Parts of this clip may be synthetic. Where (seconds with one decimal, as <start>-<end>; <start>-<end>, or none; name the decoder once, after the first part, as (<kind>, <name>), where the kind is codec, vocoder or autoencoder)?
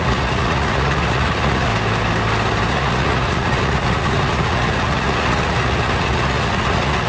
0.0-1.7 (vocoder, Vocos); 2.7-7.1